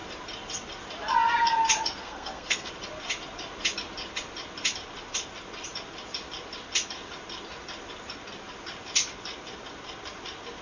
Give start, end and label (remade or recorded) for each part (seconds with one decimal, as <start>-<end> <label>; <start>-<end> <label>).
0.0-2.0 recorded; 2.0-2.7 remade; 2.7-10.6 recorded